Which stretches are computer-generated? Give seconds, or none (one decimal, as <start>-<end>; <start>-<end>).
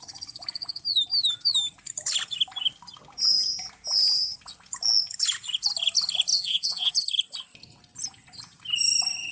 6.3-6.9